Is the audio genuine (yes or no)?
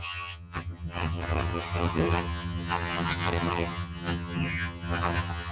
no